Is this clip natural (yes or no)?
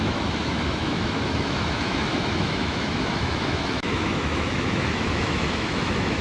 no